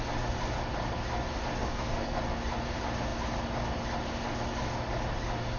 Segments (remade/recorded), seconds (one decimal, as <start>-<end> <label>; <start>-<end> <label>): 0.0-1.6 recorded; 1.6-2.2 remade; 2.2-5.6 recorded